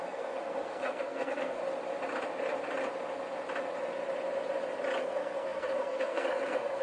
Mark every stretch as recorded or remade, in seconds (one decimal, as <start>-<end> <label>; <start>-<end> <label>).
0.0-1.6 remade; 1.6-5.0 recorded; 5.0-6.8 remade